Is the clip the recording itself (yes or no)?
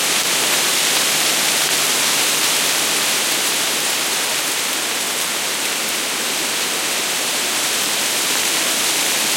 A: yes